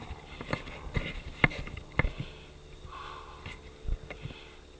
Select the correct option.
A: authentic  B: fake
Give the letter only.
A